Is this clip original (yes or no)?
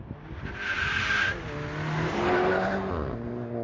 yes